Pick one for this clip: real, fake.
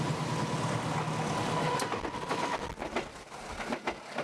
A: real